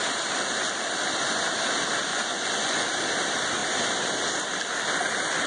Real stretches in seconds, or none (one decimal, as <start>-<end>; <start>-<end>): 0.0-2.1; 2.9-5.5